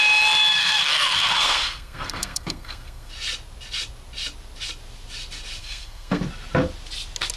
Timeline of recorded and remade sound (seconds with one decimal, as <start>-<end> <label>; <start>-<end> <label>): 0.0-0.5 recorded; 0.5-3.1 remade; 3.1-5.6 recorded; 5.6-6.2 remade; 6.2-7.4 recorded